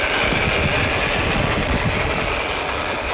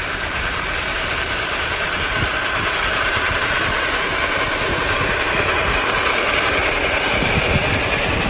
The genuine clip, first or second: first